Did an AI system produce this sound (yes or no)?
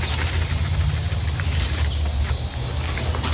no